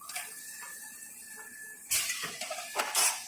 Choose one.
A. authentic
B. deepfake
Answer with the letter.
A